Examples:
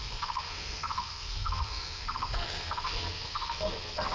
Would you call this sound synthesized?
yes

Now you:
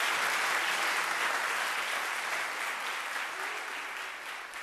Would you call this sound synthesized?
no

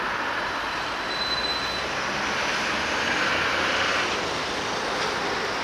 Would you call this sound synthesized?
no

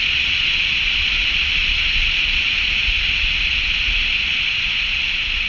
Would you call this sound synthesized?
yes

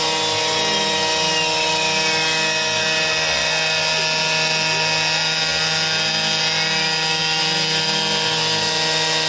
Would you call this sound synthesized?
no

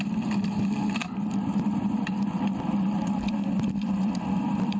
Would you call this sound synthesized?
yes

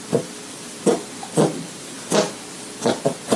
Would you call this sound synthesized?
yes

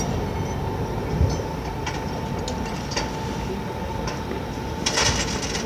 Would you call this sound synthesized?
no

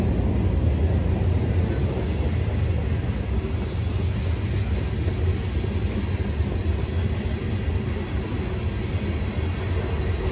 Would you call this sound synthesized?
no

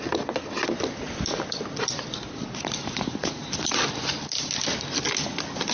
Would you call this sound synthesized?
no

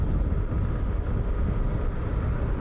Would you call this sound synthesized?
no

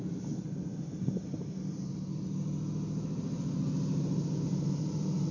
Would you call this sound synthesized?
no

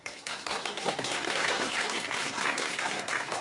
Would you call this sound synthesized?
yes